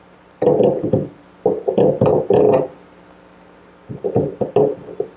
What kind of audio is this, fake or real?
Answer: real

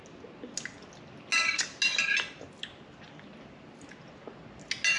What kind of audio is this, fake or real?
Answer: real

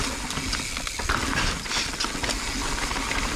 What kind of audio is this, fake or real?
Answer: real